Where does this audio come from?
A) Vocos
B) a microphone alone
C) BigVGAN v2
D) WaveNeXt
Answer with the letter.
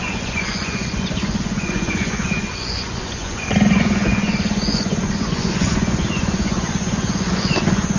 A